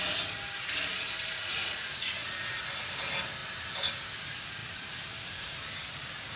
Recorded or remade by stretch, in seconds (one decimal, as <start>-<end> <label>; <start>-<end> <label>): 0.0-1.4 recorded; 1.4-2.6 remade; 2.6-6.4 recorded